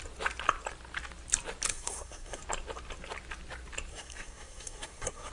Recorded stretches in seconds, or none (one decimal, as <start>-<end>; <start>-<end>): 0.0-1.7; 2.4-3.9